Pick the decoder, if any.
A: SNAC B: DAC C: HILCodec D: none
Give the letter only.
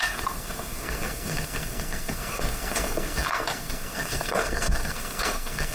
A